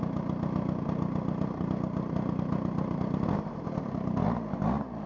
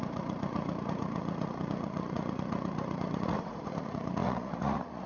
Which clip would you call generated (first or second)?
second